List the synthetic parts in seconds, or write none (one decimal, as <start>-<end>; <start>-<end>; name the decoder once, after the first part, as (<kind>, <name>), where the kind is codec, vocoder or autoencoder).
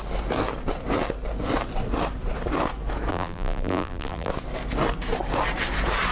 3.1-4.3 (vocoder, BigVGAN v2)